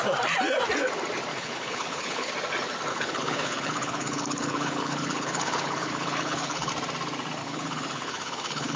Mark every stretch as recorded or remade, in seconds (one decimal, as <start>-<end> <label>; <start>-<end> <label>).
0.0-1.3 recorded; 1.3-2.3 remade; 2.3-2.9 recorded; 2.9-6.7 remade; 6.7-7.4 recorded; 7.4-8.8 remade